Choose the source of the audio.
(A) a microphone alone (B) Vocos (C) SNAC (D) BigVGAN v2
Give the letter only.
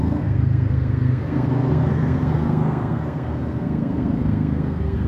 C